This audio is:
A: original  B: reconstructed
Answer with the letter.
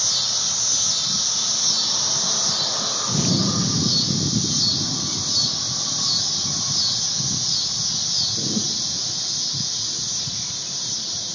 A